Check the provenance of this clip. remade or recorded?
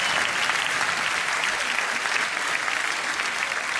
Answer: recorded